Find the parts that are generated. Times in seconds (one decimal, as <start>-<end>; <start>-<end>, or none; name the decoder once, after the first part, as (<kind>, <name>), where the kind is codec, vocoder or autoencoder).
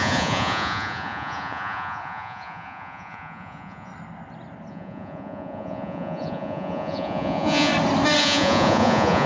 0.0-3.9 (vocoder, Vocos); 4.7-7.7; 8.2-9.3